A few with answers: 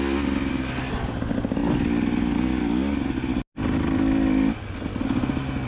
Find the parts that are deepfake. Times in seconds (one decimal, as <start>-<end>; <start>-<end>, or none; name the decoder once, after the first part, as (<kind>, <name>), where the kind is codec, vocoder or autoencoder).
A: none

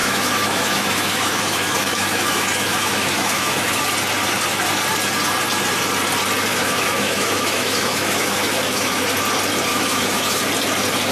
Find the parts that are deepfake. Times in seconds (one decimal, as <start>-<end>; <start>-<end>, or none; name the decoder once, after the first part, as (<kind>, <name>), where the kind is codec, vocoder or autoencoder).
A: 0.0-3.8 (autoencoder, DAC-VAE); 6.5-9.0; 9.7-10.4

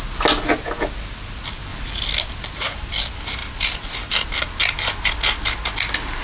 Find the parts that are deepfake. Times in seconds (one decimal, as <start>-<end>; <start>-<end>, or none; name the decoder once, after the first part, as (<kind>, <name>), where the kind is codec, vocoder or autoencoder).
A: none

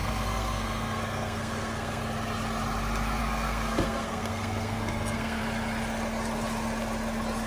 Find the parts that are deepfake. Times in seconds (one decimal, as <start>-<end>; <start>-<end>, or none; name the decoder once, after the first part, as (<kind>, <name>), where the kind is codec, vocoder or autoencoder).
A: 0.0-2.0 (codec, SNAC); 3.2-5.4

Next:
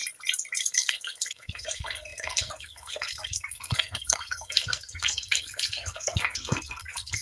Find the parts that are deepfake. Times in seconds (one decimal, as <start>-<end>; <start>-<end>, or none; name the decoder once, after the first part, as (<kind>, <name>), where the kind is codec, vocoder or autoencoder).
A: 0.6-7.2 (codec, SNAC)

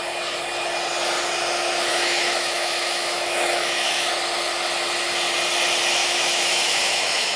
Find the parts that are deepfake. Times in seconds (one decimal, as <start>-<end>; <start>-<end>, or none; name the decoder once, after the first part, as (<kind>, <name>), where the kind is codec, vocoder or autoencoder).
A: 1.9-4.1 (autoencoder, DAC-VAE); 6.0-7.4

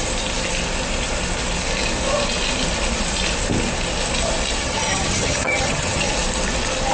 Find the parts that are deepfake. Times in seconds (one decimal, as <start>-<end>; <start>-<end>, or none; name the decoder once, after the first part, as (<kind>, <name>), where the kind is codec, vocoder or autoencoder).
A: 4.6-6.1 (vocoder, HiFi-GAN)

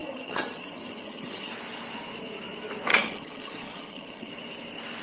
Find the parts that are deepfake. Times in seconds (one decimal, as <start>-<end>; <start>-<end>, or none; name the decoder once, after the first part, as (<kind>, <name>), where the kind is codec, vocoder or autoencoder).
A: 0.0-1.5 (vocoder, HiFi-GAN); 2.9-4.3